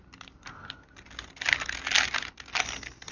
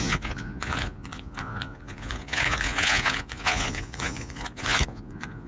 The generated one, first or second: second